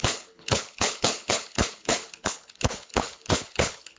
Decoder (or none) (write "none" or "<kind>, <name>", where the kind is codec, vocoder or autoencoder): codec, HILCodec